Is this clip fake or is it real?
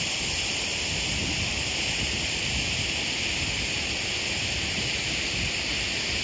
real